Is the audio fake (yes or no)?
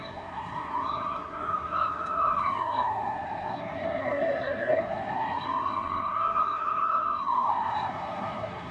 yes